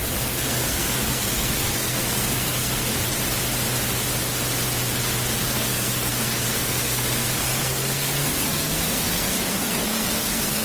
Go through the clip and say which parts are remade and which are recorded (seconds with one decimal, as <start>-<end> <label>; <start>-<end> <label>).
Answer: 0.0-2.9 remade; 2.9-5.4 recorded; 5.4-10.6 remade